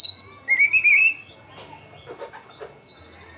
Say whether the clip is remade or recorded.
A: recorded